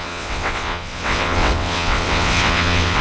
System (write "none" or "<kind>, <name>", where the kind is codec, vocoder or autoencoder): vocoder, WaveNeXt